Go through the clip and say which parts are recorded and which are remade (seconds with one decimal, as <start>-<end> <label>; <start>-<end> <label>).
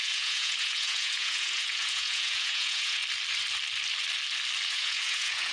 0.0-3.0 remade; 3.0-4.7 recorded; 4.7-5.5 remade